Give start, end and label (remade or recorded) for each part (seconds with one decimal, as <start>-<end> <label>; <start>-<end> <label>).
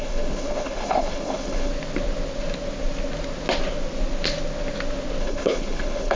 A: 0.0-1.7 remade; 1.7-5.2 recorded; 5.2-6.2 remade